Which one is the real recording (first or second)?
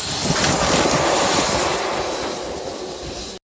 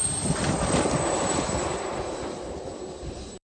first